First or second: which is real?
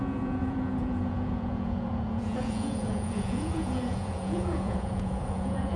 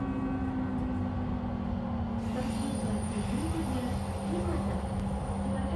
second